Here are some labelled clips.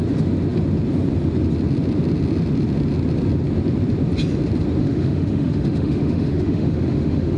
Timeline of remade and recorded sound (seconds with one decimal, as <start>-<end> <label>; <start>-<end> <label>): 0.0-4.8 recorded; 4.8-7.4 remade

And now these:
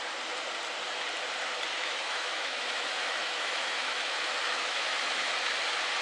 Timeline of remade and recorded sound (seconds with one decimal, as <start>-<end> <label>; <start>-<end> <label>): 0.0-1.7 recorded; 1.7-5.3 remade; 5.3-6.0 recorded

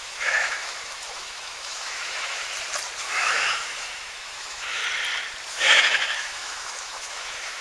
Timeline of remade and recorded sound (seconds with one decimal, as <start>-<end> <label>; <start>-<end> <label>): 0.0-2.4 remade; 2.4-3.0 recorded; 3.0-4.8 remade; 4.8-5.5 recorded; 5.5-7.6 remade

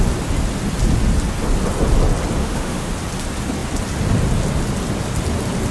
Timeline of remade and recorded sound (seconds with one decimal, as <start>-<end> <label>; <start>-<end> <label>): 0.0-2.4 recorded; 2.4-2.9 remade; 2.9-5.7 recorded

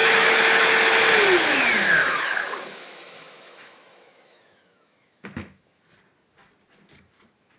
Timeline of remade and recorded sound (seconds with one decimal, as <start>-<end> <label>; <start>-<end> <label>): 0.0-1.1 remade; 1.1-2.0 recorded; 2.0-5.8 remade; 5.8-7.6 recorded

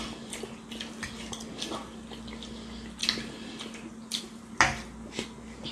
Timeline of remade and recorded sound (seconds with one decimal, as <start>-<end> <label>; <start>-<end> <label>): 0.0-5.7 recorded

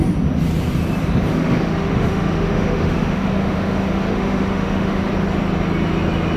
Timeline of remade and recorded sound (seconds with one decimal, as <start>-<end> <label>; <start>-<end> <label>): 0.0-1.3 recorded; 1.3-5.1 remade; 5.1-6.4 recorded

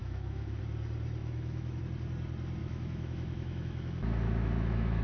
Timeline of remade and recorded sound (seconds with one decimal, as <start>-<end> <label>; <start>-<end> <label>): 0.0-0.6 remade; 0.6-1.2 recorded; 1.2-1.8 remade; 1.8-2.6 recorded; 2.6-5.0 remade